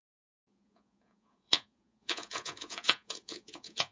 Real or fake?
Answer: fake